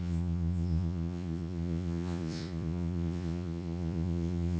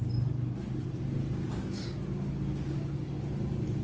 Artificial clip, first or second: first